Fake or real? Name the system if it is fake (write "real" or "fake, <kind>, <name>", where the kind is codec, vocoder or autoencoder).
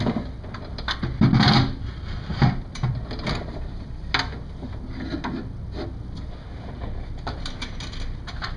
real